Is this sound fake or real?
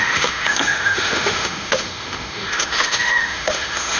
fake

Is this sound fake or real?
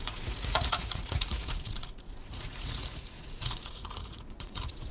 fake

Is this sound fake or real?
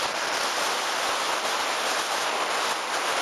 real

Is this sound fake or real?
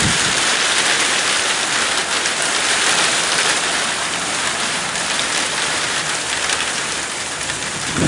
fake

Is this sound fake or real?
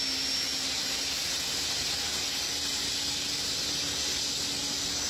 real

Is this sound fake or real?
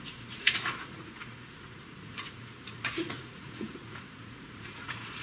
fake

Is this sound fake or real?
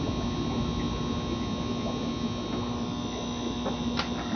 real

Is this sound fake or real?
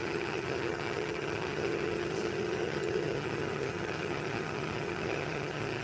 fake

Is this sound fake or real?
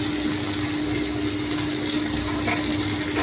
real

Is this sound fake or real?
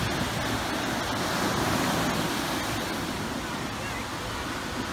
real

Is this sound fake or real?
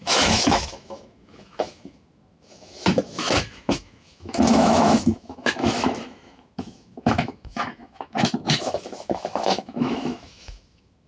fake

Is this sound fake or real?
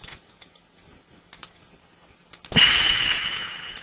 real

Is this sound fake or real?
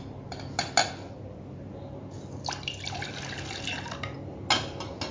real